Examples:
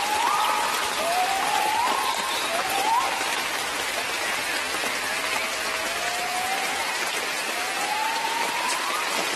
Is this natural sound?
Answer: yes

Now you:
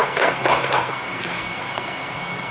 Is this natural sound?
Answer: no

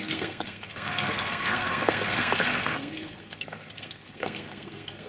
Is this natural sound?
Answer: no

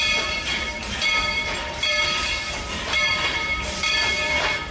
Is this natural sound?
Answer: no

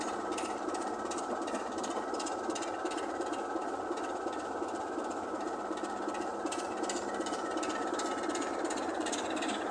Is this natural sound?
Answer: no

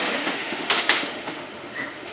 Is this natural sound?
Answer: no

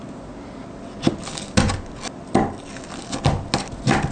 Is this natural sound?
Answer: yes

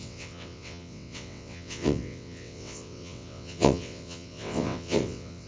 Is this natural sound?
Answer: no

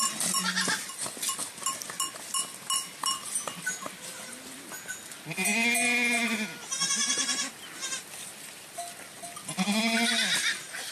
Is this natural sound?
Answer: yes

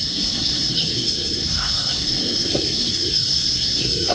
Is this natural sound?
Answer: no